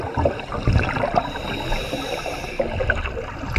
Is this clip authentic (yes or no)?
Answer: yes